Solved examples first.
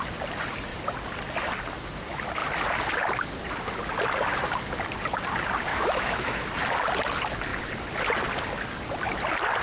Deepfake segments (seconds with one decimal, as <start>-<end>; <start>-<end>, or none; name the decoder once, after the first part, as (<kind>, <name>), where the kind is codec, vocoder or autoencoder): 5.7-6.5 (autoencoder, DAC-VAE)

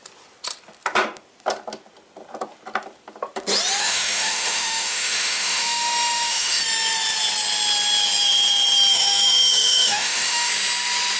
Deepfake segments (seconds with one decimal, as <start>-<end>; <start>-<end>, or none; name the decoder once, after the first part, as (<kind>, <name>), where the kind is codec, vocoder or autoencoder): 3.8-6.6 (autoencoder, DAC-VAE); 8.9-10.5

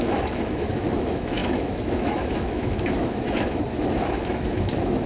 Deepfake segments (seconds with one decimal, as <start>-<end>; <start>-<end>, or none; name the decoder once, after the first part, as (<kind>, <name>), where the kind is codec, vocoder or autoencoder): 0.0-5.1 (autoencoder, DAC-VAE)

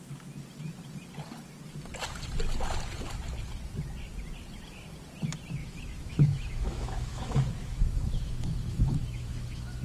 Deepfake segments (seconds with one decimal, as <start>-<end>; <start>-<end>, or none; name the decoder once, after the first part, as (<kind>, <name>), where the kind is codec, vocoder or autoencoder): 5.6-9.8 (autoencoder, DAC-VAE)

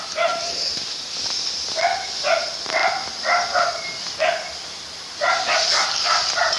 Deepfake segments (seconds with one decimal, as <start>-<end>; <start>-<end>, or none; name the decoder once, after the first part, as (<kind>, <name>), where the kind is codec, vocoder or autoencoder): none